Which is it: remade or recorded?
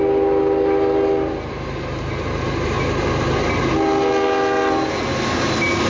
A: recorded